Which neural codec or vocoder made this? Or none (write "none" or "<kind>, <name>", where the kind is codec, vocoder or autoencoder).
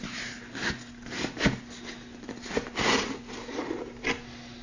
none